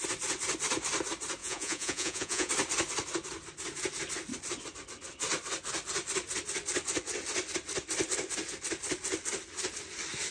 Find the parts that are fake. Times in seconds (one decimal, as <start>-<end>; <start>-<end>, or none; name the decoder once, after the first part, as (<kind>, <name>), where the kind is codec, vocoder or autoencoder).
1.4-2.5 (vocoder, Vocos)